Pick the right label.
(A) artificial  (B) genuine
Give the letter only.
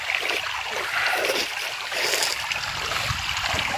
B